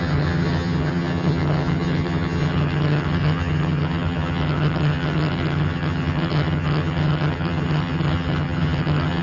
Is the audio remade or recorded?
remade